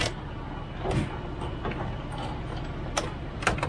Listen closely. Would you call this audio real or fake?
real